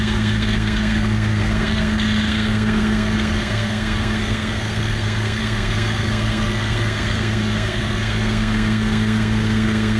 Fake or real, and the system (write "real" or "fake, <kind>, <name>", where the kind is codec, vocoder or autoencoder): fake, codec, SNAC